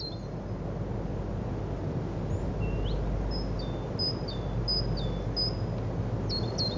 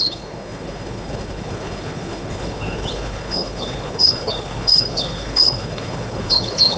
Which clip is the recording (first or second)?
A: first